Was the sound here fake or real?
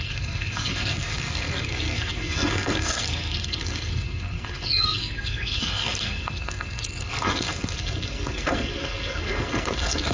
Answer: fake